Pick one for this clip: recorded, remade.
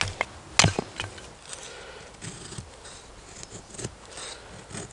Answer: recorded